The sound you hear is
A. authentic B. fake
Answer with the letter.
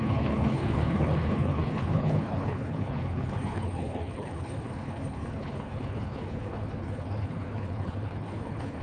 B